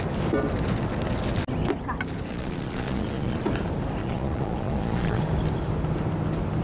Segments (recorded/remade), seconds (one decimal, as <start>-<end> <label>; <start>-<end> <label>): 0.0-2.3 recorded; 2.3-3.4 remade; 3.4-4.0 recorded; 4.0-5.2 remade; 5.2-6.6 recorded